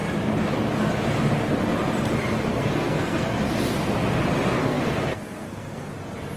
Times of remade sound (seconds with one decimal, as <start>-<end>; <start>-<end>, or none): 2.5-3.4; 4.6-5.9

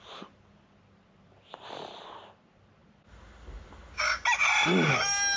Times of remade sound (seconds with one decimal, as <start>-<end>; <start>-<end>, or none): none